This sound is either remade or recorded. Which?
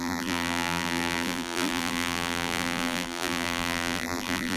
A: remade